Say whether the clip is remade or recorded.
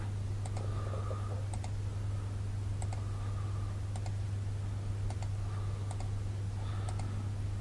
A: recorded